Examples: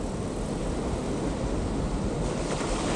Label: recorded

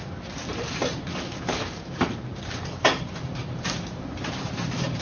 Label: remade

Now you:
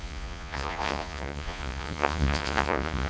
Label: remade